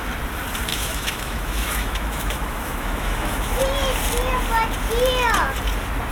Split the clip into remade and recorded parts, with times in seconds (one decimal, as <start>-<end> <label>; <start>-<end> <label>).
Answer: 0.0-0.7 recorded; 0.7-3.6 remade; 3.6-6.1 recorded